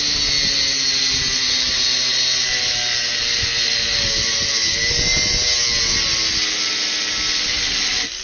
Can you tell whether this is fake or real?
real